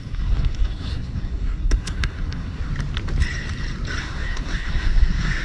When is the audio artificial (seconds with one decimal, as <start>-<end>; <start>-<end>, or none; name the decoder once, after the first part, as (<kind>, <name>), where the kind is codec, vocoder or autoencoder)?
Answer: 0.0-2.7 (codec, SNAC); 4.0-5.4